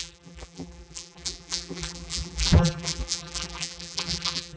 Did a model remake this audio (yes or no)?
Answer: yes